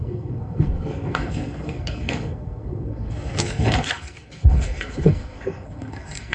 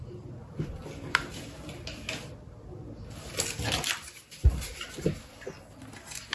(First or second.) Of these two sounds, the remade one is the first